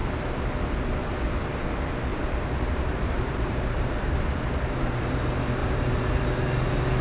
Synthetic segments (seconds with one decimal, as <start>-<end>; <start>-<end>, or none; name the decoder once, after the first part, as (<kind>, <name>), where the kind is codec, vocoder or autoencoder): 2.1-5.0 (vocoder, BigVGAN v2); 5.6-6.2